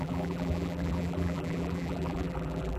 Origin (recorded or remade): remade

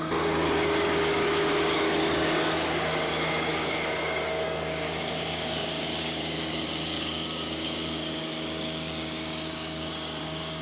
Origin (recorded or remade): remade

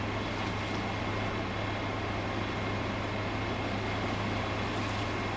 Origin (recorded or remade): recorded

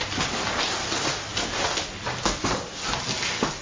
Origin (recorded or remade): recorded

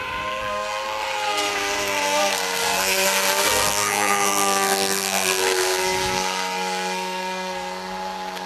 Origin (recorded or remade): remade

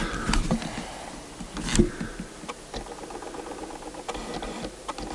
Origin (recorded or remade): recorded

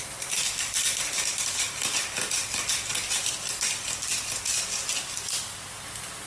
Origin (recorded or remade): recorded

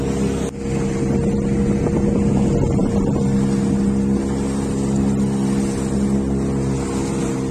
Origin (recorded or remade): recorded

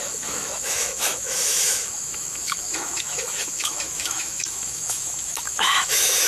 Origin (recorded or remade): remade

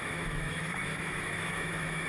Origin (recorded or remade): remade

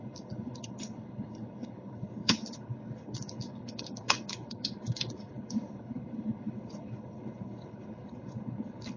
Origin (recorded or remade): remade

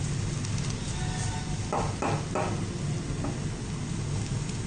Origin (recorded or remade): recorded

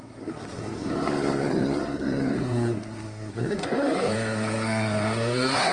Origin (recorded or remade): remade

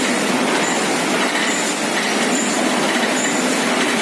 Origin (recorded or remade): recorded